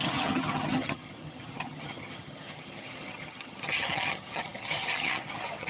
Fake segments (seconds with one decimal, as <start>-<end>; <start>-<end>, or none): 0.0-5.7